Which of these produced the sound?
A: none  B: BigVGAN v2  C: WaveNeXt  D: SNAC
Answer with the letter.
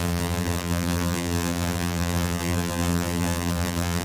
B